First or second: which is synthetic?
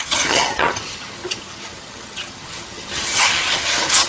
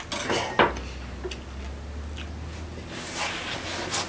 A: first